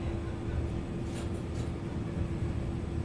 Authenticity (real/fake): real